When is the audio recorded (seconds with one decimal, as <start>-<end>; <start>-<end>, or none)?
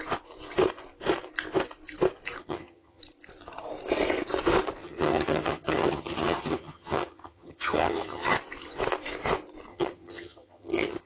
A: 0.0-2.4; 3.0-4.8; 8.3-9.7